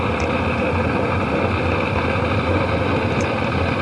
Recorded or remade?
recorded